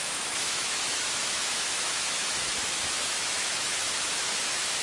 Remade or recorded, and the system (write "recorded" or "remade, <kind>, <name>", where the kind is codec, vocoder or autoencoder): remade, autoencoder, DAC-VAE